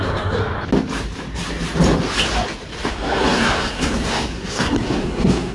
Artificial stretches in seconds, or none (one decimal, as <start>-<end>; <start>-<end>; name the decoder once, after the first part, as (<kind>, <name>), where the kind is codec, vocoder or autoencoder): 0.0-0.4 (codec, SNAC); 2.9-5.5